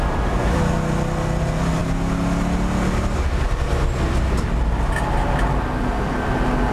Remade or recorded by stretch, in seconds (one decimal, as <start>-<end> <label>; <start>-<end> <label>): 0.0-6.7 recorded